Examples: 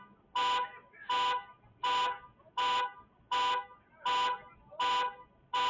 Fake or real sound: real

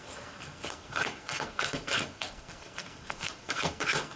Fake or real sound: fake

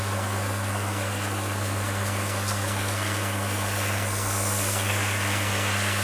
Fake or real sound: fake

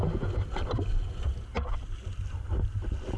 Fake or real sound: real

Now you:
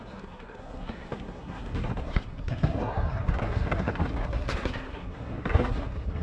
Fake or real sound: fake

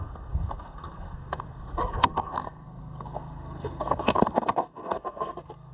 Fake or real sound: fake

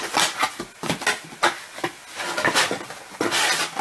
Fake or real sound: real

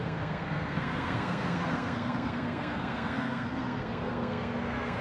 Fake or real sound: fake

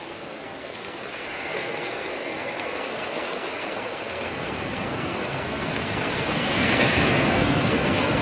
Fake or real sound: fake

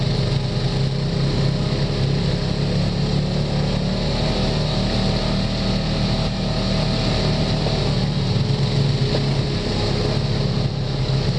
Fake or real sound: real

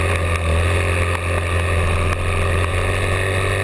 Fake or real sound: real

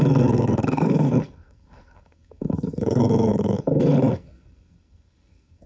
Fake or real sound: fake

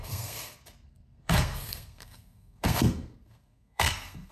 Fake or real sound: fake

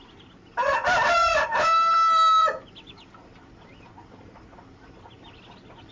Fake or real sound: real